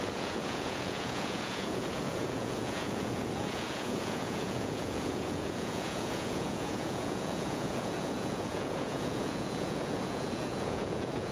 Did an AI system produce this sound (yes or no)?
yes